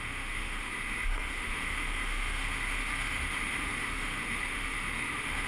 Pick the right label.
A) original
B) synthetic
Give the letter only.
B